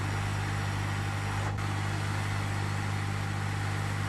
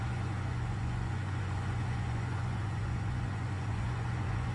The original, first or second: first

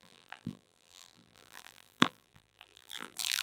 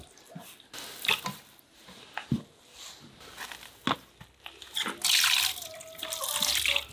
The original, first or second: second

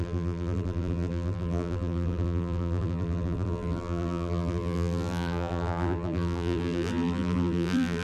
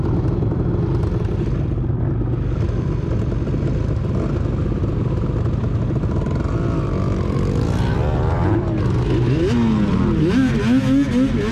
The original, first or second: second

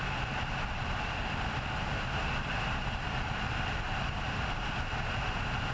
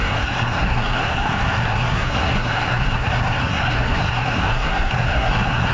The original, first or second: first